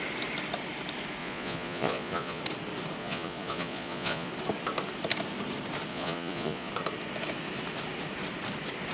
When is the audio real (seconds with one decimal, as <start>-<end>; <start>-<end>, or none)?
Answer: 0.0-1.2; 2.4-3.0; 4.3-5.9; 6.7-8.9